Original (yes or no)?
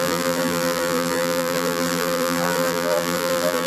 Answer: no